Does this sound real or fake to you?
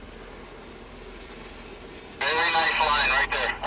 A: real